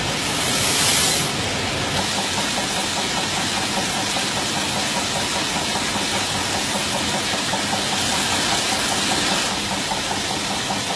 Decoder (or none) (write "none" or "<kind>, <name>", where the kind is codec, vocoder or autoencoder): none